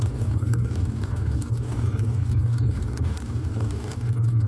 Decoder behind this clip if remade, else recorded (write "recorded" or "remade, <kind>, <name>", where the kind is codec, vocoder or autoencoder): remade, codec, DAC